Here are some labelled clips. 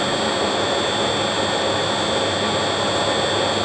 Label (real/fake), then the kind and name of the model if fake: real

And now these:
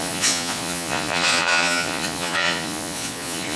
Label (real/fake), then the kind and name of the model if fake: fake, vocoder, Vocos